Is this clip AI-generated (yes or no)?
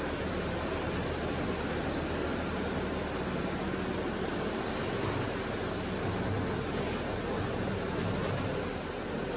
no